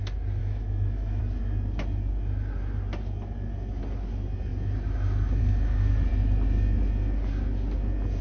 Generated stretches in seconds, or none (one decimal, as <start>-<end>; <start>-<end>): 0.4-1.2